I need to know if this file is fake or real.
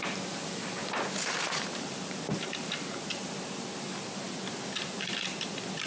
real